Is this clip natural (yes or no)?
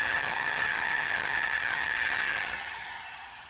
no